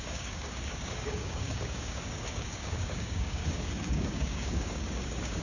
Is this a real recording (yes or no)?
no